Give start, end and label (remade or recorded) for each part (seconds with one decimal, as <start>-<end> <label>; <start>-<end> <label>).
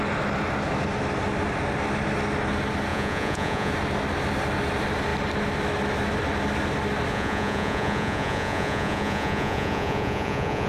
0.0-2.9 recorded; 2.9-3.7 remade; 3.7-7.1 recorded; 7.1-10.7 remade